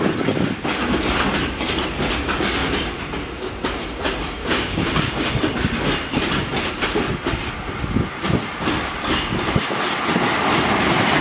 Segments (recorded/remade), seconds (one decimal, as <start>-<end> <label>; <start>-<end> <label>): 0.0-4.4 recorded; 4.4-5.2 remade; 5.2-11.2 recorded